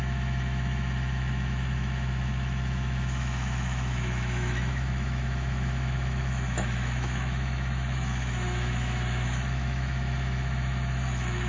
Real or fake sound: fake